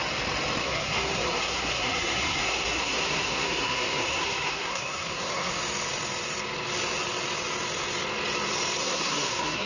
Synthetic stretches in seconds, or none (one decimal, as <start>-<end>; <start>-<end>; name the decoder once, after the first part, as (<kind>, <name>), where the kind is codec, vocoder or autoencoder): 0.6-5.5 (codec, SNAC); 8.8-9.7